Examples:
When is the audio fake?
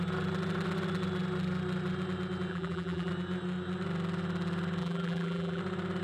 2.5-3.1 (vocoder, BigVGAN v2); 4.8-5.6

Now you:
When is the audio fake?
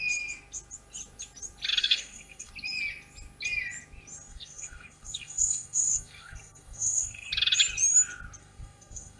1.8-2.5 (codec, SNAC); 4.3-7.3; 8.4-9.2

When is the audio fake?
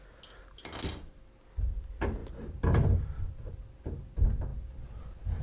none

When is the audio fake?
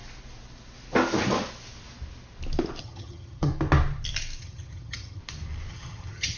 2.8-3.5 (vocoder, HiFi-GAN); 4.4-5.2; 5.7-6.4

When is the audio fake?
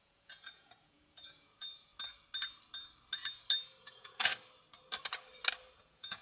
0.0-1.9 (vocoder, Vocos); 3.8-4.3; 5.7-6.2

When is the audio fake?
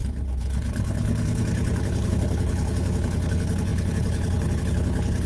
0.0-5.3 (codec, HILCodec)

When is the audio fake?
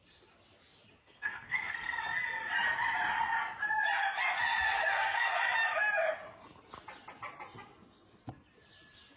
1.0-2.0 (codec, SNAC); 4.8-5.4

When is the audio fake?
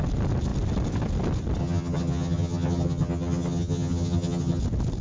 1.6-4.6 (vocoder, HiFi-GAN)